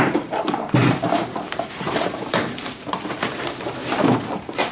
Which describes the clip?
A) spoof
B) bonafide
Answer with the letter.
A